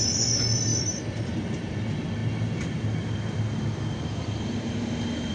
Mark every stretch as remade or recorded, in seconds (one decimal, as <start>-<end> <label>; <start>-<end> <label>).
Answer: 0.0-2.2 remade; 2.2-5.3 recorded